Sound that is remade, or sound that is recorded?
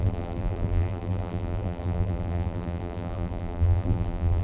remade